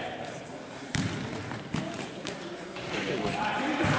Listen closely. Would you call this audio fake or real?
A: fake